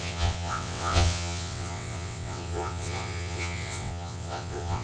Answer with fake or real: fake